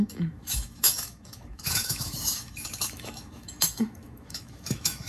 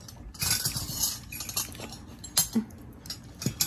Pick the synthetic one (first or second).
first